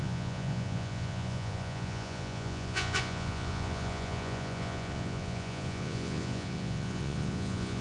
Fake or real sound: fake